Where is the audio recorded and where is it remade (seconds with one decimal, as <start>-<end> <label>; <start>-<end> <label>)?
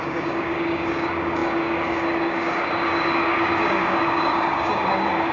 0.0-5.3 remade